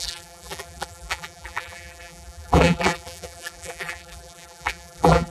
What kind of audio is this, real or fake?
fake